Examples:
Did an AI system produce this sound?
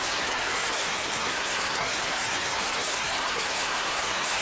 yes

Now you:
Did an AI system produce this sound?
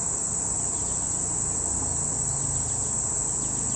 no